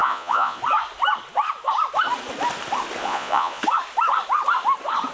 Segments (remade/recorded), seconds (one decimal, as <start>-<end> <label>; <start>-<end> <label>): 0.0-0.6 remade; 0.6-3.0 recorded; 3.0-3.6 remade; 3.6-5.1 recorded